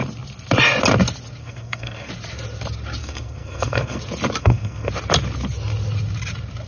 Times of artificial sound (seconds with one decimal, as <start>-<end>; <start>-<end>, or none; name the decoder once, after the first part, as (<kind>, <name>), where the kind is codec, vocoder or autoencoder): 1.4-2.1 (codec, SNAC); 3.0-4.0; 4.4-4.9

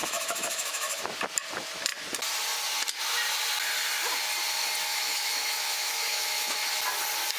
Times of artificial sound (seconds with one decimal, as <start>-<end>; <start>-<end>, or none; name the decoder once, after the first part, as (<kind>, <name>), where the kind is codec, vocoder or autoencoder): 0.0-1.0 (autoencoder, DAC-VAE); 4.9-6.6

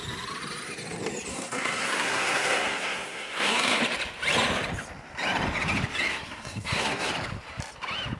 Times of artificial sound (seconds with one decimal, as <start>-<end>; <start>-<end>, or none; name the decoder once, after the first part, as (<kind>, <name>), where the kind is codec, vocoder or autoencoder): 1.3-3.8 (codec, SNAC); 6.1-7.1

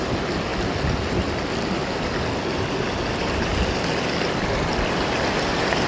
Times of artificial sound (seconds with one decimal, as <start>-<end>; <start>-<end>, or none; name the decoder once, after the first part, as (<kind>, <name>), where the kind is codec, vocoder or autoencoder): none

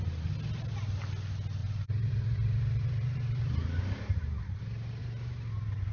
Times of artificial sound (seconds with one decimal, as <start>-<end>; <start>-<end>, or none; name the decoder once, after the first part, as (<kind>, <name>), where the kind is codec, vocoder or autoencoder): 1.6-4.6 (vocoder, BigVGAN v2); 5.0-5.9